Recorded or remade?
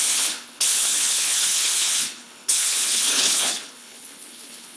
remade